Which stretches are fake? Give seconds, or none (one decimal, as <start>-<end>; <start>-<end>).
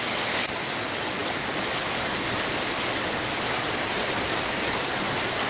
none